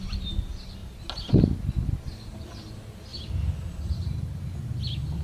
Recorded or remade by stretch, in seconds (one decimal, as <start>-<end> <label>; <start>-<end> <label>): 0.0-5.2 recorded